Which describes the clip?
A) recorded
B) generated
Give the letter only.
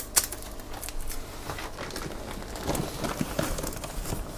A